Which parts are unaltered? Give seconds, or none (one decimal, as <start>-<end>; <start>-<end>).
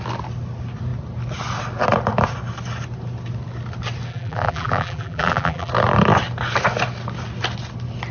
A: 0.0-4.1; 5.7-8.1